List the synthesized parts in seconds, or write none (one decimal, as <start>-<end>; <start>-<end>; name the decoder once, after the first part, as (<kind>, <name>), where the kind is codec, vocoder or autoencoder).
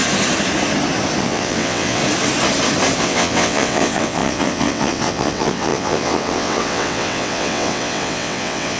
1.2-2.0 (vocoder, WaveNeXt); 3.0-8.8